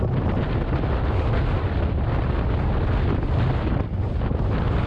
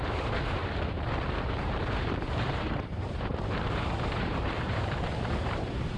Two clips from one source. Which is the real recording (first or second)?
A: first